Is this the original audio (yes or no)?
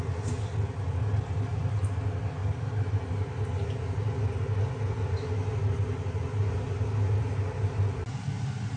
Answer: yes